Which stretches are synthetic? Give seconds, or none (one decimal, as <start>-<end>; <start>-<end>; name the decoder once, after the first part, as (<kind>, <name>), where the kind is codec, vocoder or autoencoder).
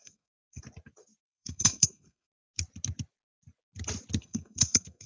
0.0-0.6 (codec, SNAC); 1.2-2.3; 4.2-5.1